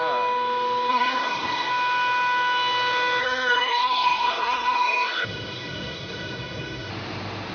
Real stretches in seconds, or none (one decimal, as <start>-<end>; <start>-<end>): 0.0-0.9; 1.7-3.2; 6.9-7.5